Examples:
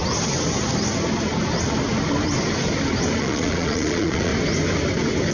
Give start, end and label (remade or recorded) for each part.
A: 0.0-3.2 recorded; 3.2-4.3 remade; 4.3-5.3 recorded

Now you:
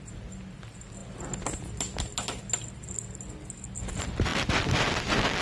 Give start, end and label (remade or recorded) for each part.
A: 0.0-5.4 recorded

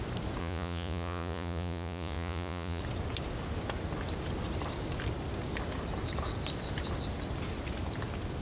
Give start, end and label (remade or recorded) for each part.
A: 0.0-0.4 recorded; 0.4-2.8 remade; 2.8-8.4 recorded

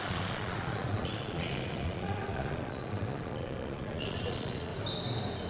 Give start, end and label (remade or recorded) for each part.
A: 0.0-4.7 remade; 4.7-5.5 recorded

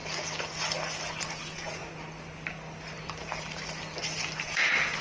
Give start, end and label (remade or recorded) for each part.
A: 0.0-1.3 recorded; 1.3-1.8 remade; 1.8-4.4 recorded; 4.4-5.0 remade

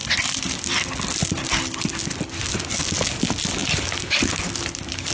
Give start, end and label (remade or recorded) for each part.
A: 0.0-5.1 recorded